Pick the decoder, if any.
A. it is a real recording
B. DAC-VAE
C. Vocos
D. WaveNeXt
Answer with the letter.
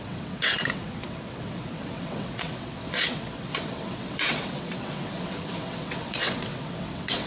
D